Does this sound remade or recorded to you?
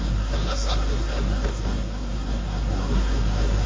remade